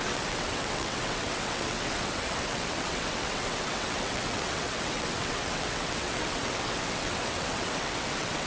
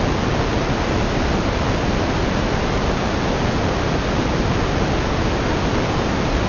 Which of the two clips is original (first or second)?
second